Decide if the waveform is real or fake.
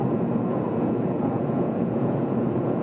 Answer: fake